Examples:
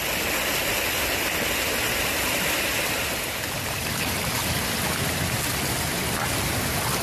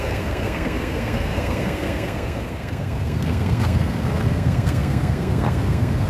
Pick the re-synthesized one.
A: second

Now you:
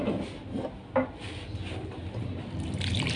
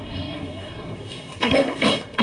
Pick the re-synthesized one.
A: second